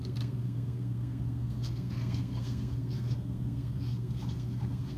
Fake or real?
fake